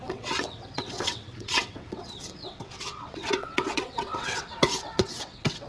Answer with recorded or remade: remade